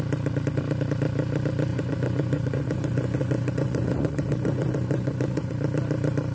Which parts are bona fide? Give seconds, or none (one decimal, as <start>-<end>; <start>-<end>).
0.0-1.7; 5.5-6.3